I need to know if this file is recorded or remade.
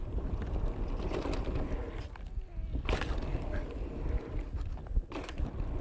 recorded